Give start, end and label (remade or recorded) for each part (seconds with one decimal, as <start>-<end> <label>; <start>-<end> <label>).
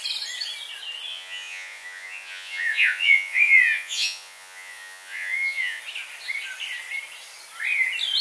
0.0-1.1 recorded; 1.1-5.8 remade; 5.8-8.2 recorded